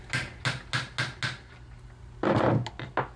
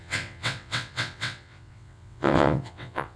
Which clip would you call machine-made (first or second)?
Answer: second